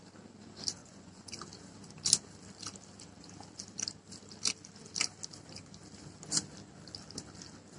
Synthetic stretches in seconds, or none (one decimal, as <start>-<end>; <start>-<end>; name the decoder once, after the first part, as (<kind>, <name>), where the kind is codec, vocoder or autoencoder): 0.8-1.3 (vocoder, Vocos)